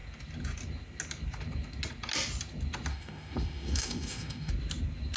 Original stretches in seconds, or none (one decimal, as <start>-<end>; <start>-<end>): 0.0-2.9; 4.5-5.2